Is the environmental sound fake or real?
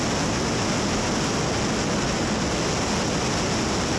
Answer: real